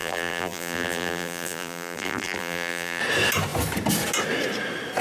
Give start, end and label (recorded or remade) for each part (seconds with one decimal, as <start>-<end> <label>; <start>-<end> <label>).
0.0-3.0 remade; 3.0-5.0 recorded

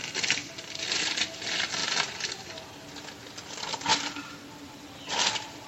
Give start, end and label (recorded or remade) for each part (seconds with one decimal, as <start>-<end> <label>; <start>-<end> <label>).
0.0-0.4 recorded; 0.4-1.0 remade; 1.0-1.8 recorded; 1.8-2.5 remade; 2.5-3.9 recorded; 3.9-5.1 remade; 5.1-5.7 recorded

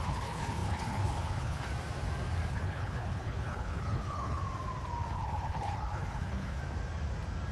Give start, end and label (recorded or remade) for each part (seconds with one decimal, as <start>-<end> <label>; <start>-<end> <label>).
0.0-1.7 remade; 1.7-2.5 recorded; 2.5-4.4 remade; 4.4-5.1 recorded; 5.1-6.6 remade; 6.6-7.5 recorded

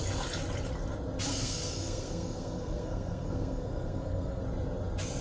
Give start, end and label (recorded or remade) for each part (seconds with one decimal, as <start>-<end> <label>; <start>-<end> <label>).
0.0-1.3 recorded; 1.3-4.4 remade; 4.4-5.2 recorded

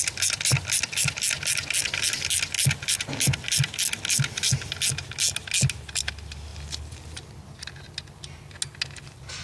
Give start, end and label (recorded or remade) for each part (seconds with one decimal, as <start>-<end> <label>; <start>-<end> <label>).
0.0-9.4 recorded